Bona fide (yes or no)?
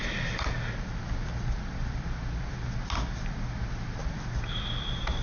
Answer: yes